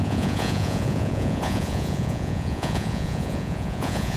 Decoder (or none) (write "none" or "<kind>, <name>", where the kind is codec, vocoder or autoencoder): vocoder, Vocos